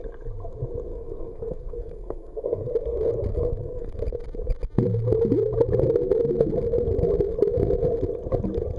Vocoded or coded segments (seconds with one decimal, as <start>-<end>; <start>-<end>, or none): 0.9-2.7; 3.3-4.0